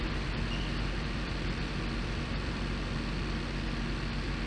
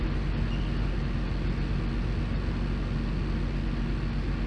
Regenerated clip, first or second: first